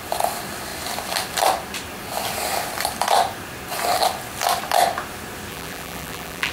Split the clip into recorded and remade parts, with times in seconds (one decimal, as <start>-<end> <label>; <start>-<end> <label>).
0.0-5.5 recorded; 5.5-6.5 remade